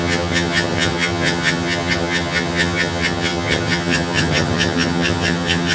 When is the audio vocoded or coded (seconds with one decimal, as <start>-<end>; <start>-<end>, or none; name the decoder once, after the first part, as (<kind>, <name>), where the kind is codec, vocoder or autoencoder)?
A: 0.0-5.7 (vocoder, HiFi-GAN)